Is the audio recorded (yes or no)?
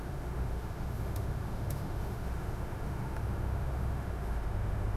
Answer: no